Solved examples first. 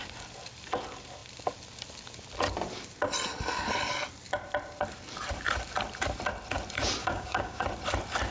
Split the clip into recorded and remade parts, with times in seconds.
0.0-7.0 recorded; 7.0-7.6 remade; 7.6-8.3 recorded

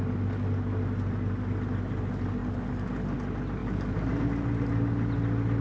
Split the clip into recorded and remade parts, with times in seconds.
0.0-3.6 recorded; 3.6-4.2 remade; 4.2-5.6 recorded

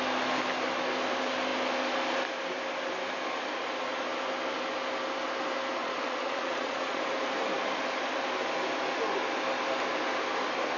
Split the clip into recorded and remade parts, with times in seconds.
0.0-5.8 recorded; 5.8-7.0 remade; 7.0-10.8 recorded

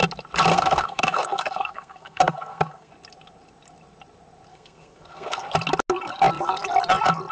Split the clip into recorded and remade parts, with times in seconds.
0.0-0.5 recorded; 0.5-2.9 remade; 2.9-4.5 recorded; 4.5-5.5 remade; 5.5-7.3 recorded

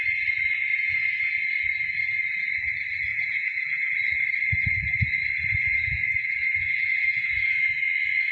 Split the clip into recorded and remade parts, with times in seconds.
0.0-0.7 recorded; 0.7-1.3 remade; 1.3-3.1 recorded; 3.1-3.9 remade; 3.9-5.6 recorded; 5.6-7.8 remade; 7.8-8.3 recorded

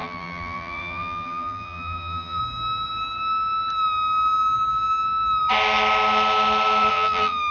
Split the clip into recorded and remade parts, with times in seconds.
0.0-2.4 remade; 2.4-6.9 recorded; 6.9-7.5 remade

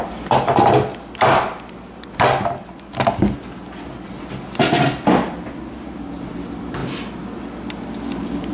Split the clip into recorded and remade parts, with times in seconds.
0.0-8.5 recorded

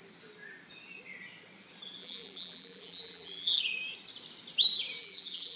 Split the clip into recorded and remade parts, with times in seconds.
0.0-2.0 recorded; 2.0-3.6 remade; 3.6-5.0 recorded; 5.0-5.6 remade